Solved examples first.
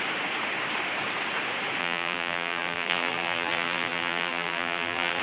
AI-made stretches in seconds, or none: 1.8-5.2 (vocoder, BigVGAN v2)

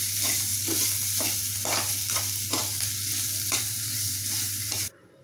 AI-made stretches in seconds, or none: 0.0-0.5 (vocoder, BigVGAN v2); 3.6-5.2

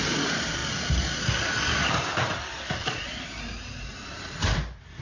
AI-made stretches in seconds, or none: 0.0-0.6 (vocoder, BigVGAN v2); 1.8-5.0

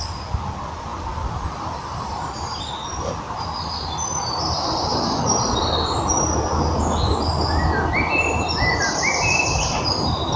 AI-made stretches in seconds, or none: none

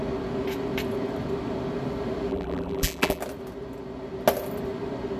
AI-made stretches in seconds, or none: 2.3-3.2 (vocoder, BigVGAN v2)

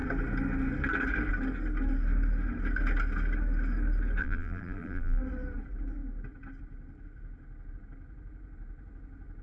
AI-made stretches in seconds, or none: 4.2-5.2 (vocoder, BigVGAN v2)